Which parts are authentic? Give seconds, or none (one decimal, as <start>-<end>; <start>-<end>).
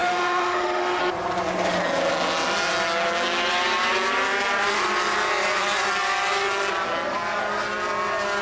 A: 1.0-8.4